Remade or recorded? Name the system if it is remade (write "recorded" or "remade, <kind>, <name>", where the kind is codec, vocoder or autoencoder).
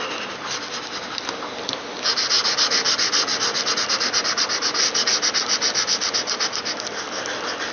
recorded